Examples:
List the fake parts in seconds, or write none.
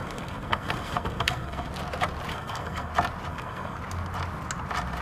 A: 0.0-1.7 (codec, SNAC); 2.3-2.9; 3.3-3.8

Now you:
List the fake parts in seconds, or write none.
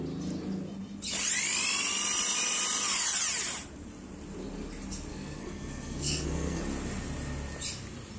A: 5.1-6.6 (codec, SNAC)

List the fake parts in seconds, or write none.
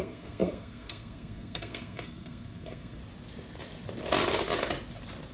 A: 0.0-3.0 (codec, SNAC)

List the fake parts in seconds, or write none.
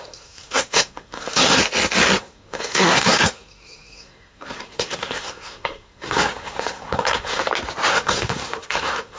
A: 0.0-1.6 (codec, SNAC); 2.2-7.4; 7.9-9.2